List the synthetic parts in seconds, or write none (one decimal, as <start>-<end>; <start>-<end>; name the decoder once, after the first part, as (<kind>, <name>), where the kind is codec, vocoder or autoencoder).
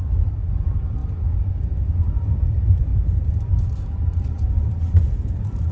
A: 2.9-5.7 (vocoder, BigVGAN v2)